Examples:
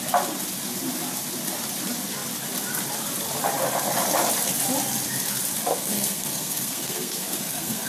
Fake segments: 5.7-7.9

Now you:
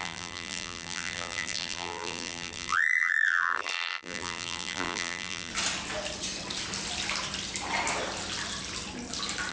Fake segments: 0.0-5.5

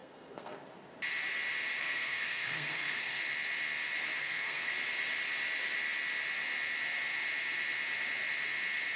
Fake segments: 0.0-0.7; 1.8-3.2; 4.2-4.7

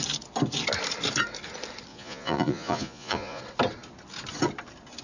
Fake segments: 1.9-3.4

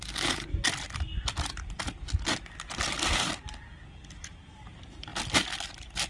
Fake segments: none

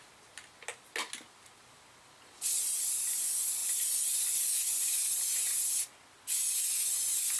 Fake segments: none

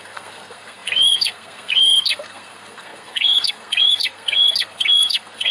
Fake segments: 0.0-5.5